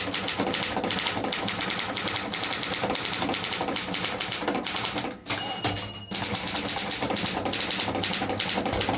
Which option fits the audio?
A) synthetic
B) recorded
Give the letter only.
B